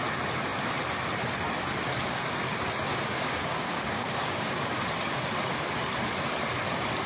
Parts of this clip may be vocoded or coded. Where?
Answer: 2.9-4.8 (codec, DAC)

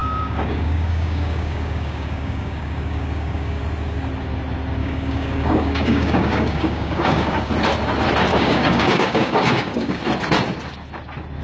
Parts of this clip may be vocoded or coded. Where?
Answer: 0.0-3.6 (codec, DAC); 4.8-7.5; 8.3-10.0

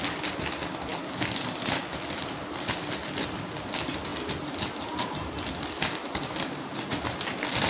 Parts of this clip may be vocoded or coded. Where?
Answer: 0.9-1.4 (codec, DAC)